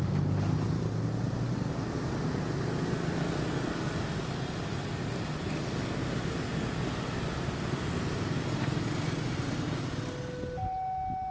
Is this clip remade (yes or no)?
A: no